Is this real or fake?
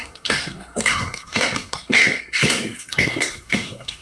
fake